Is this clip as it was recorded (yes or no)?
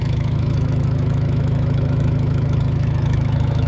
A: no